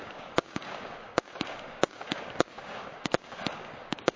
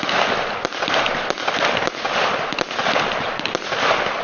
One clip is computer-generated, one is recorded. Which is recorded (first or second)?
second